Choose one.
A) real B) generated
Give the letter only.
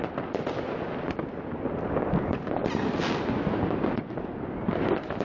A